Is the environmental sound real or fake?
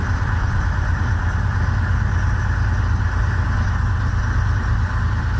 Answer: real